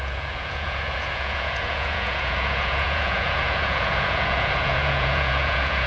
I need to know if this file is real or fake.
fake